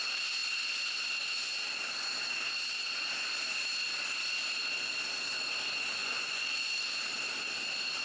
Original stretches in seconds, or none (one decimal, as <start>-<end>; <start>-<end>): 0.0-6.0; 6.7-8.0